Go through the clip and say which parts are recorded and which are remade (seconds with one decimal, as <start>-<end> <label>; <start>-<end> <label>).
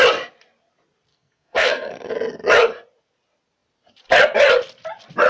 0.0-1.1 recorded; 1.1-2.1 remade; 2.1-5.3 recorded